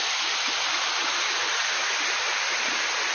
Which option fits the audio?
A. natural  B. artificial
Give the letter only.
A